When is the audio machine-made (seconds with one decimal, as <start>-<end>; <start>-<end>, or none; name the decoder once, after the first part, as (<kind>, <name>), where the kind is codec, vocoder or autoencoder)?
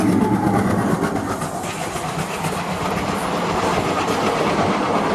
0.0-3.7 (vocoder, BigVGAN v2); 4.4-5.1